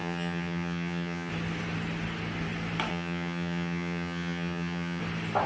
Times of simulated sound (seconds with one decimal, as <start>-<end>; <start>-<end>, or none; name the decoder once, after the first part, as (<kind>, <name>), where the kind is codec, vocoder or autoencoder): 0.0-1.3 (vocoder, HiFi-GAN); 2.9-5.0